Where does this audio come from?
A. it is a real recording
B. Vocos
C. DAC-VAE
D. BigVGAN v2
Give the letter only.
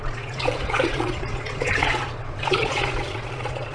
B